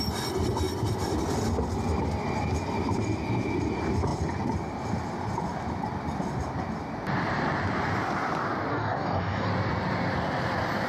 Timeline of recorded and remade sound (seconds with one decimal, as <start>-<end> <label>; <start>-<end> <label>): 0.0-8.7 recorded; 8.7-9.5 remade; 9.5-10.9 recorded